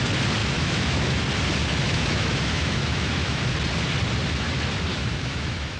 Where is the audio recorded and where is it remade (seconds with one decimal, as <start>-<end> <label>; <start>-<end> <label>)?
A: 0.0-0.4 recorded; 0.4-1.2 remade; 1.2-1.6 recorded; 1.6-3.4 remade; 3.4-4.9 recorded; 4.9-5.8 remade